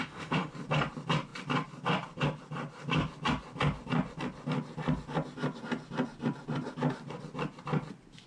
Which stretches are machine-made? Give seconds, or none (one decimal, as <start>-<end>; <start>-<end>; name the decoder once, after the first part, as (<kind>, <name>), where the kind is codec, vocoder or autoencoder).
0.0-0.5 (autoencoder, DAC-VAE)